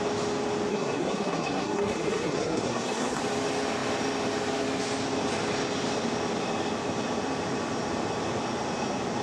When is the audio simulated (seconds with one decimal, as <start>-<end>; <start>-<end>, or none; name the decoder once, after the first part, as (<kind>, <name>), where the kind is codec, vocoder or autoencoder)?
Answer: 0.7-3.2 (codec, SNAC)